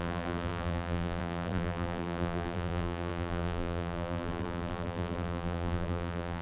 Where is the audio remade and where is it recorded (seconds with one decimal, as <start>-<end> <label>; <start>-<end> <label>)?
0.0-6.4 remade